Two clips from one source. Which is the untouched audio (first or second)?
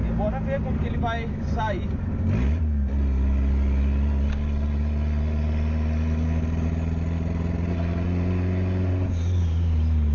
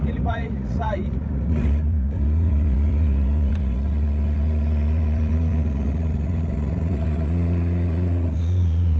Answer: first